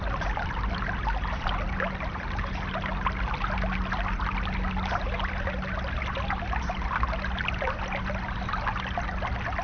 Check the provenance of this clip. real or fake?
real